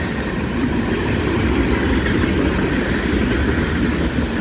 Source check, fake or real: real